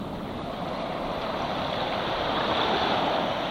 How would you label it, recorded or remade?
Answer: remade